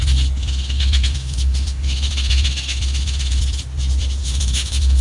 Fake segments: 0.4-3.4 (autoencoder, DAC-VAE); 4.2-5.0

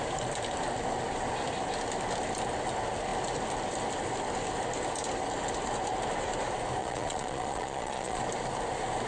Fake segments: 6.8-8.2 (vocoder, Vocos)

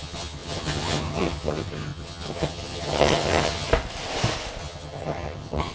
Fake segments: 0.0-3.7 (vocoder, HiFi-GAN); 4.6-5.7

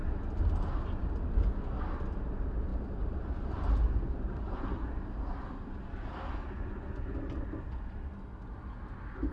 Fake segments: 2.7-5.8 (vocoder, BigVGAN v2)

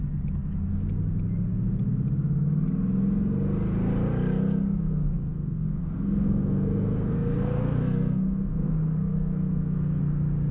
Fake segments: 4.8-10.0 (codec, SNAC)

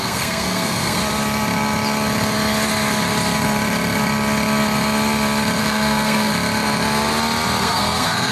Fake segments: 0.0-1.0 (codec, SNAC); 5.6-6.3; 7.6-8.3